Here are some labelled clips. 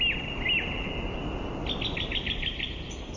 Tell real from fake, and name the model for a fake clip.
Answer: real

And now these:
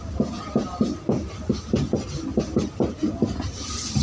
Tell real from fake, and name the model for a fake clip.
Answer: fake, vocoder, BigVGAN v2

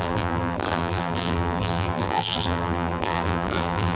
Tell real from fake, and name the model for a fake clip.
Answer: fake, vocoder, BigVGAN v2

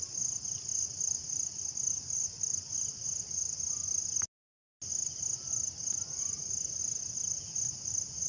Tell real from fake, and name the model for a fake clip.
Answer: real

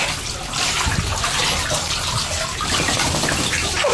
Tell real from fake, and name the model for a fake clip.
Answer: real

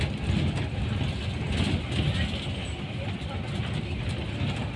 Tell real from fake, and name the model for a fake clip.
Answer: real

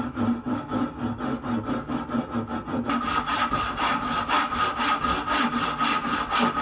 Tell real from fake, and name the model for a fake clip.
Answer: real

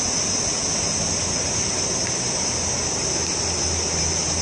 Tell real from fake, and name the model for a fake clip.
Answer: real